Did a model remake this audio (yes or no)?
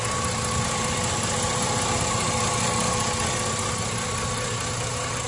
no